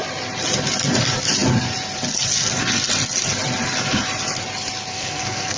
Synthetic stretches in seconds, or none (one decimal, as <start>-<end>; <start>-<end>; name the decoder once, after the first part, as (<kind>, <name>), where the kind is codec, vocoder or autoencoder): 4.9-5.6 (codec, SNAC)